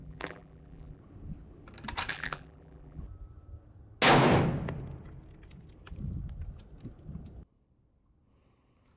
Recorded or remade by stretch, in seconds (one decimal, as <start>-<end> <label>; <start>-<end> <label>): 0.0-1.0 remade; 1.0-2.1 recorded; 2.1-3.0 remade; 3.0-9.0 recorded